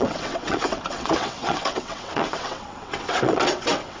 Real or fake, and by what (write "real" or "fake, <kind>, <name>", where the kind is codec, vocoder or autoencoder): fake, vocoder, WaveNeXt